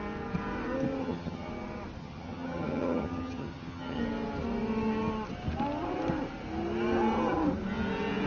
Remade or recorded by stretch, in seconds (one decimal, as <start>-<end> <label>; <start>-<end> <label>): 0.0-1.0 recorded; 1.0-1.5 remade; 1.5-2.0 recorded; 2.0-4.0 remade; 4.0-8.3 recorded